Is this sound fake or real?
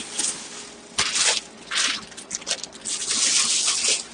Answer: real